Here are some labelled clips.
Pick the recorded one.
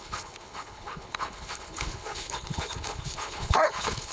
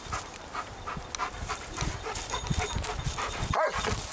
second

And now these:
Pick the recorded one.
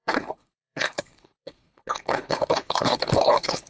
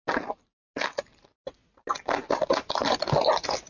second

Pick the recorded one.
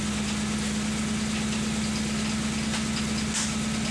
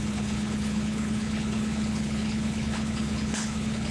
first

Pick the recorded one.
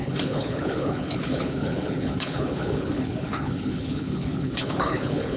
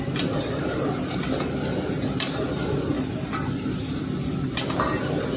second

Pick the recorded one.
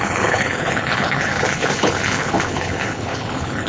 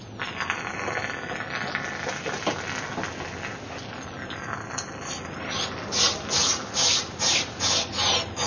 second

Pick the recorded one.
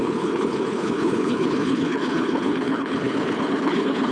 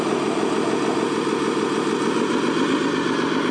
second